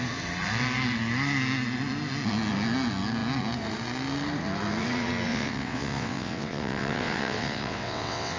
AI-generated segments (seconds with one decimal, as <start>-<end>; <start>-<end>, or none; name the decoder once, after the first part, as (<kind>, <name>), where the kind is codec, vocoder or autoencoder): 5.3-8.4 (vocoder, WaveNeXt)